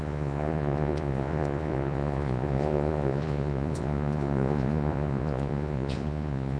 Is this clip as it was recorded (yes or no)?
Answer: no